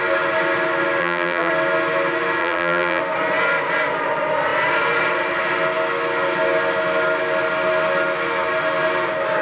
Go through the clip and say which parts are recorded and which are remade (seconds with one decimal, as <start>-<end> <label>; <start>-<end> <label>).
0.0-1.0 recorded; 1.0-1.5 remade; 1.5-2.4 recorded; 2.4-3.0 remade; 3.0-9.4 recorded